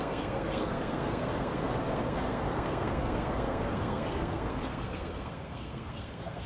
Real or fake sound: fake